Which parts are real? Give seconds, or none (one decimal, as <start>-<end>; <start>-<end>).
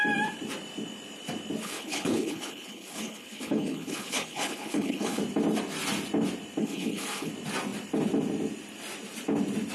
0.0-1.6; 5.2-6.6; 7.3-9.7